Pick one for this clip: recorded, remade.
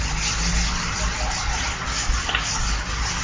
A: recorded